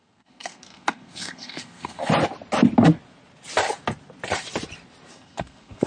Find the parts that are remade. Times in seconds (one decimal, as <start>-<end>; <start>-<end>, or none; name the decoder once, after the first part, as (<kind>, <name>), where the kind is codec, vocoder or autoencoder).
0.0-2.0 (codec, SNAC); 5.1-5.9